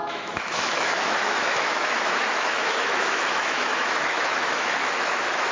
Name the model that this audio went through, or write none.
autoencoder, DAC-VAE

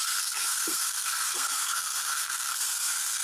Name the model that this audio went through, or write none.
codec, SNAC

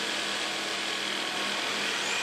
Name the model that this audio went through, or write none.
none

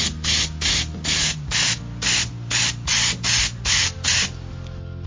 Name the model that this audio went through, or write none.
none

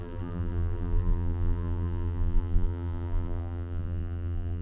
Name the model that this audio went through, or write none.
vocoder, BigVGAN v2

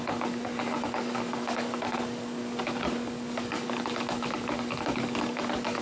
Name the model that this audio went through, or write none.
codec, DAC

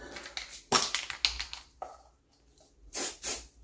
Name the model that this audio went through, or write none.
none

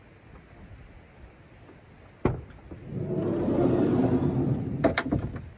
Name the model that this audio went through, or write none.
none